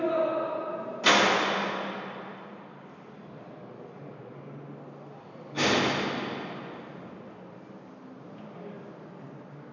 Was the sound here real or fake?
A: real